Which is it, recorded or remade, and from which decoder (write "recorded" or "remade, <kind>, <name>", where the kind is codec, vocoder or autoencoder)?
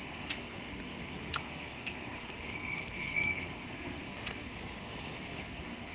remade, codec, SNAC